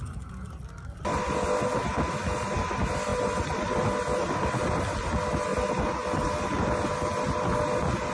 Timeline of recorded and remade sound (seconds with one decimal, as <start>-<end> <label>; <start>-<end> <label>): 0.0-3.1 recorded; 3.1-4.8 remade; 4.8-8.1 recorded